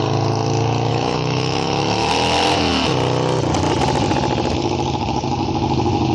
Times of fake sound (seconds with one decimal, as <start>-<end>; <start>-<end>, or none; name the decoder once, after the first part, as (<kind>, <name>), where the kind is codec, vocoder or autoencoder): 0.9-2.1 (autoencoder, DAC-VAE)